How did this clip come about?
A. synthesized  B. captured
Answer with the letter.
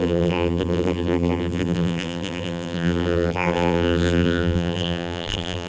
A